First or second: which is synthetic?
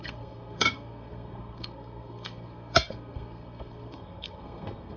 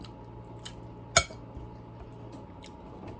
first